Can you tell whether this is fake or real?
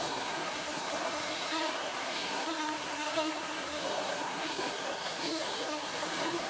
fake